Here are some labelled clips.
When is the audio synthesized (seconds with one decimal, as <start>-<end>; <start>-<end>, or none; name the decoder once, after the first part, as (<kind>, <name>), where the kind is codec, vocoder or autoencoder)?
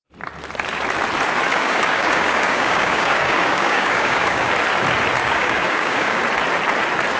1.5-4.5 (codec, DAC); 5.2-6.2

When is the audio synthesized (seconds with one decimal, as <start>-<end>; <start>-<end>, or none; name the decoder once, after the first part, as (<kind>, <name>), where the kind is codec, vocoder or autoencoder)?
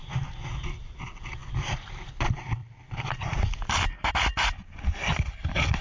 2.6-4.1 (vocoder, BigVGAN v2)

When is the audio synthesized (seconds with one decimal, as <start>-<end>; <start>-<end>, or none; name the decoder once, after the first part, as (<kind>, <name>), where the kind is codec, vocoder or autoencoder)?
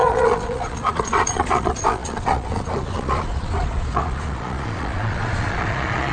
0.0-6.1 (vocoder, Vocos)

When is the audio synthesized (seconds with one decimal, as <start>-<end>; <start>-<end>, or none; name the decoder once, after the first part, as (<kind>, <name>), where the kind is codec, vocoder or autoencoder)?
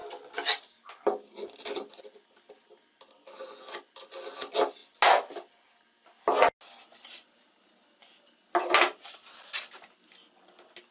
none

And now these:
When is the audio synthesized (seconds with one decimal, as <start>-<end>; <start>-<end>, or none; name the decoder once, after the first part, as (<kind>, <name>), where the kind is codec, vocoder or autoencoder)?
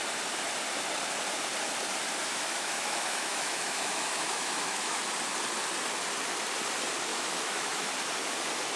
2.3-5.0 (autoencoder, DAC-VAE); 7.1-7.9